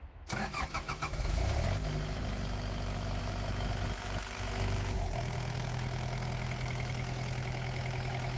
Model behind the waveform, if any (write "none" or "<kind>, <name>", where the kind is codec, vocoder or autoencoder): autoencoder, DAC-VAE